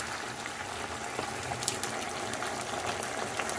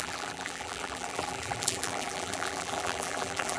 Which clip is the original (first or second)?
first